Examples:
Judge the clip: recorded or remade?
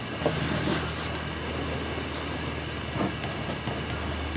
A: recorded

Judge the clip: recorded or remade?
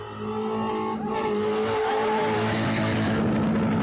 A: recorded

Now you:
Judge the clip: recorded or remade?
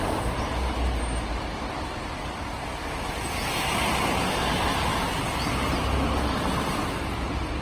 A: recorded